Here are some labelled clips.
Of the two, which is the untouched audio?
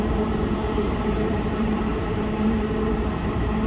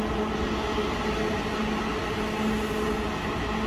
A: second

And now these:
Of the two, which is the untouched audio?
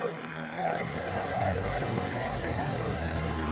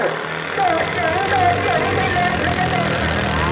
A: second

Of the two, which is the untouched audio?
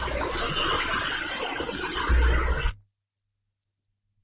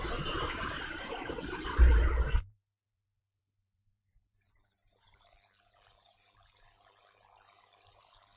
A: first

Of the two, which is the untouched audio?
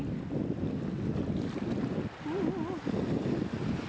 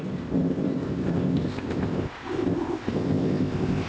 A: first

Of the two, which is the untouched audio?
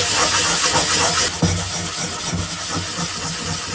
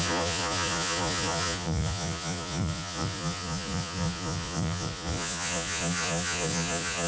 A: first